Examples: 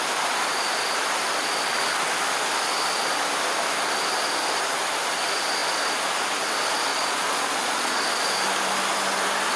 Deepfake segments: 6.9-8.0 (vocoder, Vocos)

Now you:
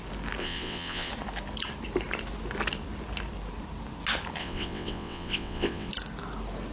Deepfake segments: 0.4-1.1 (vocoder, WaveNeXt); 4.4-5.9